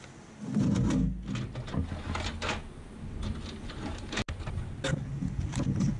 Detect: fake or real real